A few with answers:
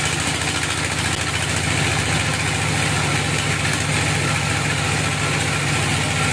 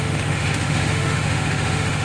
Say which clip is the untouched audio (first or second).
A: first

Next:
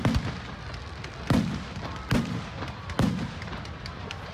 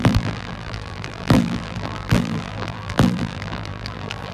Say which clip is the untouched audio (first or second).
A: first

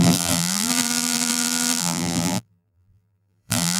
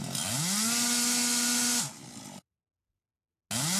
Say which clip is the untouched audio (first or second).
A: second